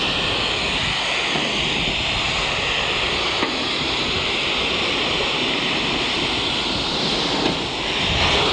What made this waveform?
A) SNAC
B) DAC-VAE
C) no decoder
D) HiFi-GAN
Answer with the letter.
C